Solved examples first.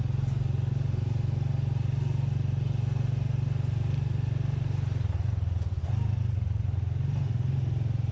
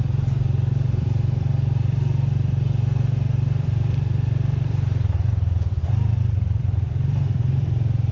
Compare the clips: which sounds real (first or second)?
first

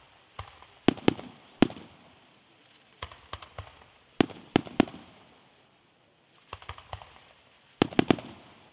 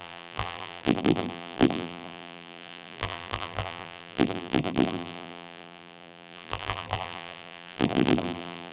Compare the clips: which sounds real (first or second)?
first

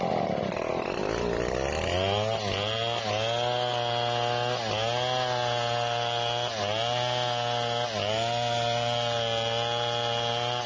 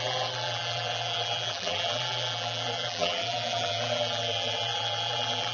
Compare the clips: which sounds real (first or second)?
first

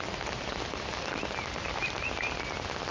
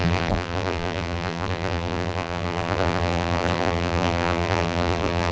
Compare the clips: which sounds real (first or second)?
first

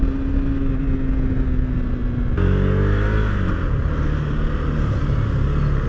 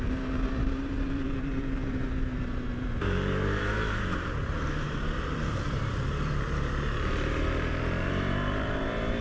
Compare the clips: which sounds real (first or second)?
first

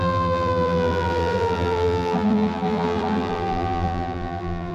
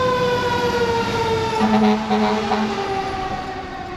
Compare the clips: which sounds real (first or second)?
second